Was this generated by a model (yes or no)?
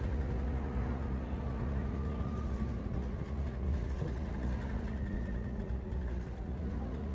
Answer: yes